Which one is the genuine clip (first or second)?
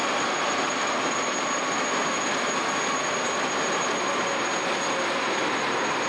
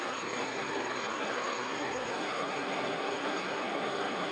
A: first